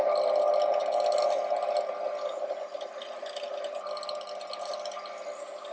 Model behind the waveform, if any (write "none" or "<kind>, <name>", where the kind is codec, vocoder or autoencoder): none